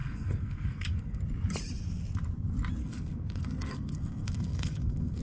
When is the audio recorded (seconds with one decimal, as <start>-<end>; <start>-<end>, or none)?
1.2-2.8